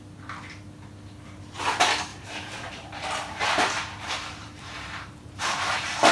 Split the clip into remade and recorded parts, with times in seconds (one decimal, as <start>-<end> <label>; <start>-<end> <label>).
0.0-2.1 recorded; 2.1-6.1 remade